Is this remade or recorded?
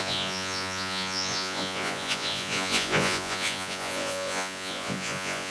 remade